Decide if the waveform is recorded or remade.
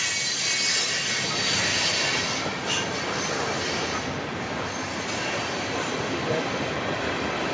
recorded